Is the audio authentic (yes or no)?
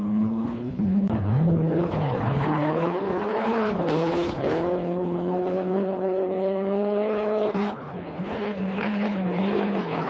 no